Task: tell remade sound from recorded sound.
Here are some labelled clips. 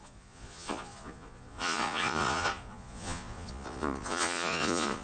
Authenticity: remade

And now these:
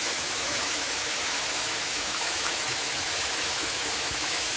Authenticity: remade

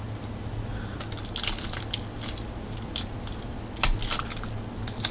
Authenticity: recorded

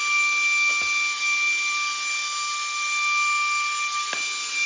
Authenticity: recorded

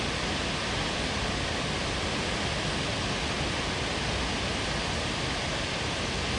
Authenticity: recorded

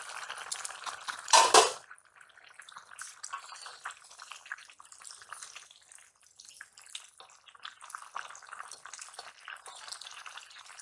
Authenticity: recorded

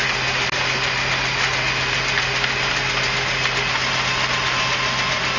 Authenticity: recorded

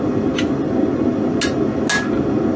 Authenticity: recorded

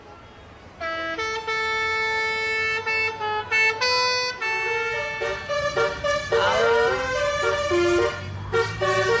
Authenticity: recorded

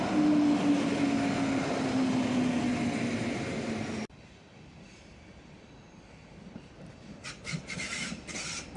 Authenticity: recorded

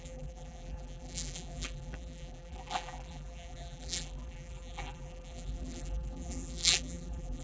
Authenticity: remade